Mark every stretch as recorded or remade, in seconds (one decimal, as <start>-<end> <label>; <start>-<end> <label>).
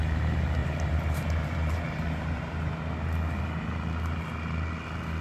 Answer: 0.0-0.6 recorded; 0.6-2.8 remade; 2.8-5.2 recorded